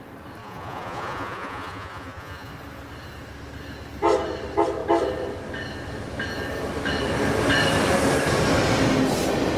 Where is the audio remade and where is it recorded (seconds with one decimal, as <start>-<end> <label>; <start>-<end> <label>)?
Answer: 0.0-0.4 recorded; 0.4-2.5 remade; 2.5-9.6 recorded